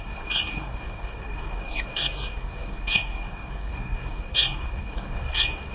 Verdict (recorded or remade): remade